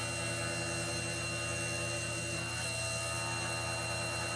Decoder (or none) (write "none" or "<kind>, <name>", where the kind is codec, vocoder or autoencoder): none